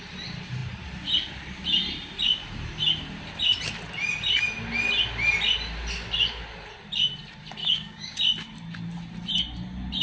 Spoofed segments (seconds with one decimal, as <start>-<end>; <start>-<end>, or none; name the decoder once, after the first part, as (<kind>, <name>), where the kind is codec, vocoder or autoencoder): 7.6-8.2 (codec, DAC)